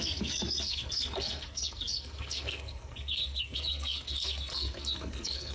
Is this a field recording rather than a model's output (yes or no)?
no